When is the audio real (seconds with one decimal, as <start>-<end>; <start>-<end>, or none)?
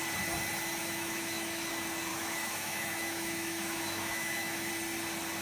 0.0-0.8; 1.7-2.1; 4.7-5.4